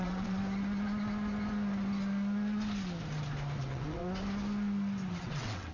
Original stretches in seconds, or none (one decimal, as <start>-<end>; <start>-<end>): 0.4-3.6; 4.0-5.1